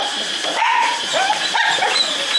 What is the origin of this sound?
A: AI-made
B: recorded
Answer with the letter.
A